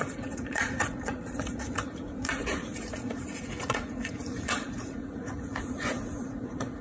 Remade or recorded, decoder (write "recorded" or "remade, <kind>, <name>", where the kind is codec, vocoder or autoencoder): remade, vocoder, Vocos